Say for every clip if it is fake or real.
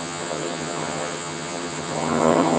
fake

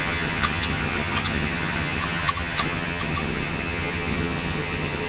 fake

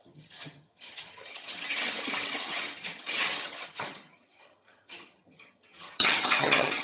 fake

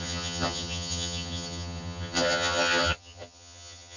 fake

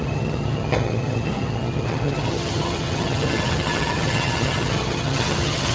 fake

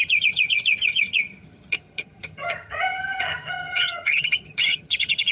fake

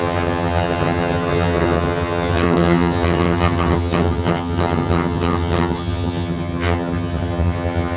fake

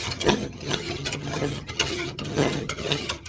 fake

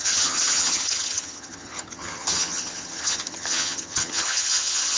fake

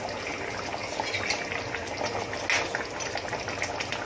real